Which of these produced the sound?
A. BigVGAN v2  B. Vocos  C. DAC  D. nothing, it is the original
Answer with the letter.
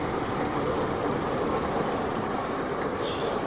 D